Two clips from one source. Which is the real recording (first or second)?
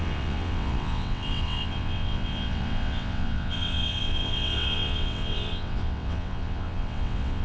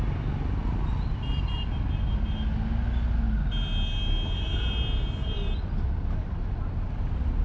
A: second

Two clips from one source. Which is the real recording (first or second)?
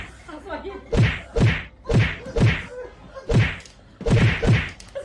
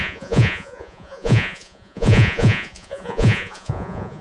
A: first